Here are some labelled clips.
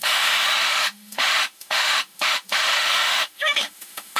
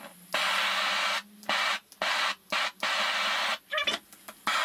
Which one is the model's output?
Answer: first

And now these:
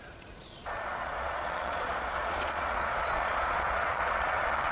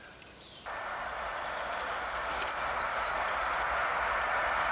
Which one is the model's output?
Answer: first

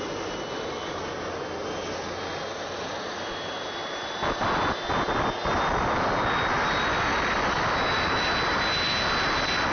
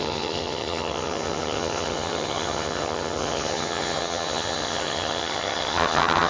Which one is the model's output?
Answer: second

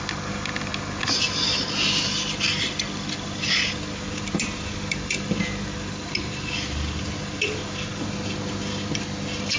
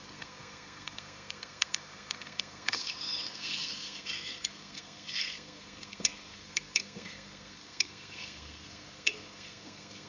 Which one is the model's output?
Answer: second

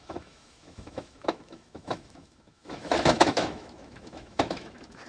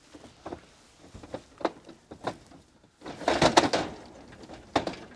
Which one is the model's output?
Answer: first